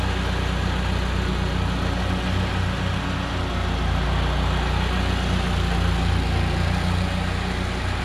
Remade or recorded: recorded